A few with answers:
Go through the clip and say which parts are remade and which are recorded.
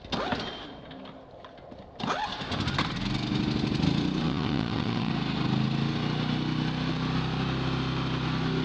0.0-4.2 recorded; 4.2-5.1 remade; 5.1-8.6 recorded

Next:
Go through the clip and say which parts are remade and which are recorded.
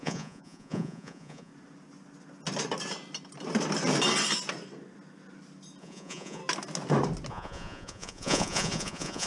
0.0-1.5 remade; 1.5-5.8 recorded; 5.8-6.4 remade; 6.4-7.3 recorded; 7.3-9.3 remade